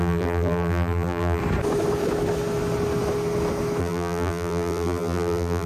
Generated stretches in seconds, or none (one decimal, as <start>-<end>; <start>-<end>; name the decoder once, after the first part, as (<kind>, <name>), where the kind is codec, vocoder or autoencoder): 0.0-1.4 (vocoder, BigVGAN v2); 3.8-5.7